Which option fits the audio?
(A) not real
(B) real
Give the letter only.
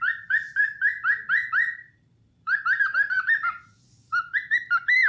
A